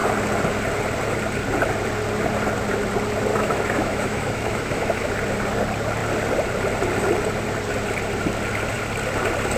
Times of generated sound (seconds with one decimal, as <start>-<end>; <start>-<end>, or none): 3.3-5.1